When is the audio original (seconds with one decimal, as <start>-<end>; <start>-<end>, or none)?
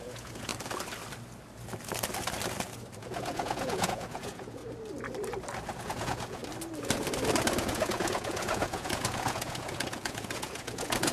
0.5-3.0; 4.6-5.8; 6.4-7.6